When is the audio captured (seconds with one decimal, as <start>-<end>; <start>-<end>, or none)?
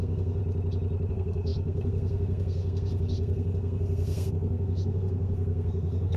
0.4-1.1